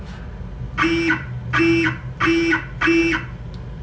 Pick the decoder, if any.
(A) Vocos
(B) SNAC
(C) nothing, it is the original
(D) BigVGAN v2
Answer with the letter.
C